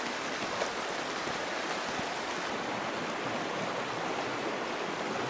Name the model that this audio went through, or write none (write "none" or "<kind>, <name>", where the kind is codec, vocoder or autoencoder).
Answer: none